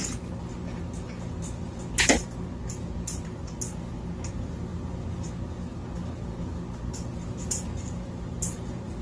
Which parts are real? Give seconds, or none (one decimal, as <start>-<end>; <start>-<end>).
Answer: 0.0-2.8; 3.4-4.3; 4.7-7.3